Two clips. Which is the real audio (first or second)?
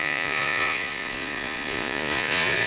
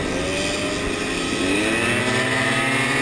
second